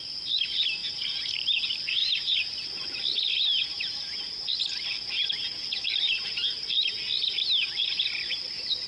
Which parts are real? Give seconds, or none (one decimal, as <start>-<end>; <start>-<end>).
0.0-8.9